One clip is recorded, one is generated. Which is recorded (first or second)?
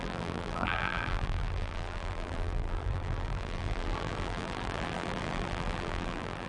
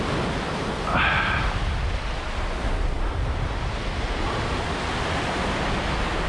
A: second